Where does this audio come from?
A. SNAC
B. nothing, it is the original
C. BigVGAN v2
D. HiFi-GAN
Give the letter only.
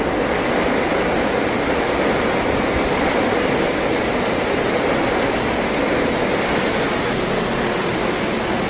B